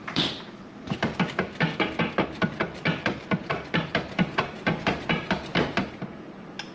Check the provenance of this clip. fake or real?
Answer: real